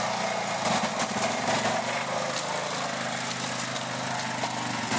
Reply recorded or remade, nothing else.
recorded